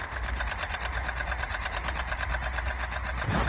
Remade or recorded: recorded